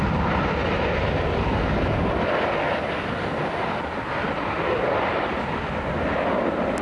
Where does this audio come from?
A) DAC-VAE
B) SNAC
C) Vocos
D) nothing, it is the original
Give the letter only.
D